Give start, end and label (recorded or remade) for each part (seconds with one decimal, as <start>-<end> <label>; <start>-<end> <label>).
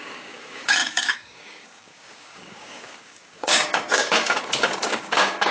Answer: 0.0-5.5 remade